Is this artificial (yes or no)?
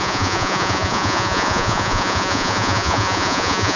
yes